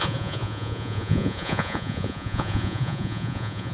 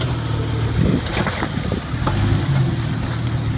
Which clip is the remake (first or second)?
first